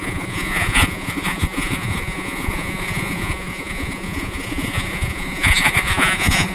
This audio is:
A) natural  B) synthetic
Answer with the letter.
B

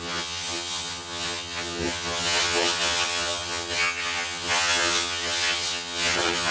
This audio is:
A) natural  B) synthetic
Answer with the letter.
B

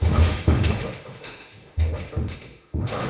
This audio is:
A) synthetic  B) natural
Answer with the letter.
A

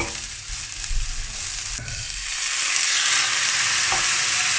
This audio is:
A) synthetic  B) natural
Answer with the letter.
B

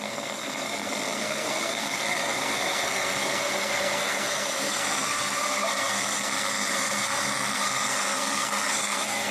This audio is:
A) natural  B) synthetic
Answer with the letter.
B